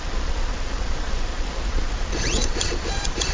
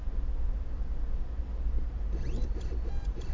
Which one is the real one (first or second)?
second